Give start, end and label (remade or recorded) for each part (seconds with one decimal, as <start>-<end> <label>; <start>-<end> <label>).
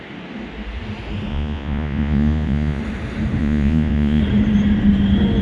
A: 0.0-1.3 recorded; 1.3-2.8 remade; 2.8-3.4 recorded; 3.4-4.2 remade; 4.2-5.4 recorded